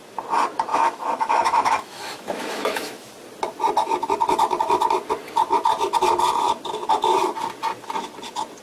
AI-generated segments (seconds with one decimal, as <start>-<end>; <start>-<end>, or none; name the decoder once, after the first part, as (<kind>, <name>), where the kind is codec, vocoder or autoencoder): 0.7-3.1 (autoencoder, DAC-VAE)